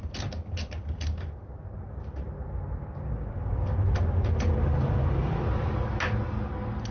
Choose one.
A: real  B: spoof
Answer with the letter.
A